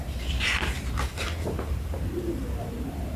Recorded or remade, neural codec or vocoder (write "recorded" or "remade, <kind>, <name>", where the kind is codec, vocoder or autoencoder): remade, vocoder, BigVGAN v2